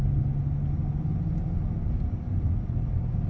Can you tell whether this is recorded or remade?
recorded